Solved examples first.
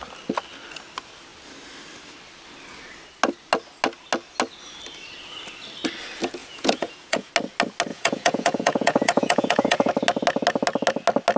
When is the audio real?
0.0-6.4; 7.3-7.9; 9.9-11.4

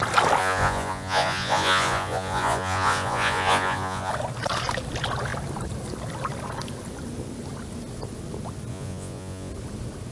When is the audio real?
0.0-0.4; 4.1-8.7; 9.5-10.1